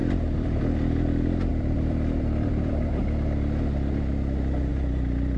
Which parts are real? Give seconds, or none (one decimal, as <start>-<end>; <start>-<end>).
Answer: 0.6-1.5; 3.0-4.7